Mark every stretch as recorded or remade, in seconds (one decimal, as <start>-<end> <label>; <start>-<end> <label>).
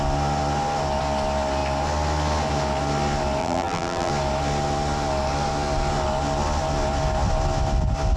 0.0-3.4 recorded; 3.4-4.1 remade; 4.1-8.2 recorded